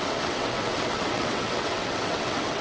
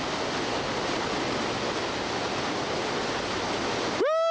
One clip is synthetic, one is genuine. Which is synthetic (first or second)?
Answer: first